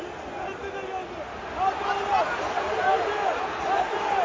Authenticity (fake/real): real